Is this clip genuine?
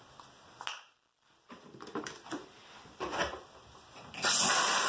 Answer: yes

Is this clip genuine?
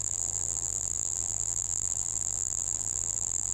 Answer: no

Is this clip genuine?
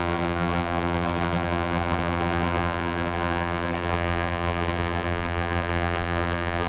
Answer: no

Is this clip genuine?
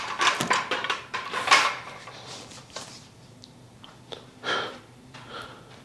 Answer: no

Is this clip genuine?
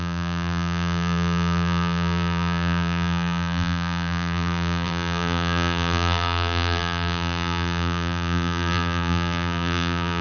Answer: no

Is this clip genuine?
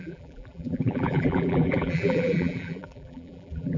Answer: no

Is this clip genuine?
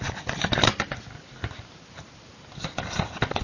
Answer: yes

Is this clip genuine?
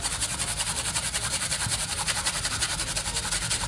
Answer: no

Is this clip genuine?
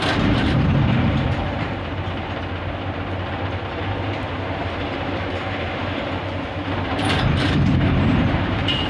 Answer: no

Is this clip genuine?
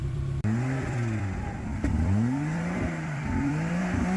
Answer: no